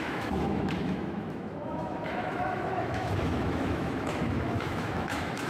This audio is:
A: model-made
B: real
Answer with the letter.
A